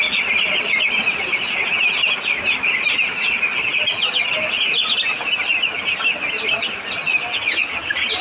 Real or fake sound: real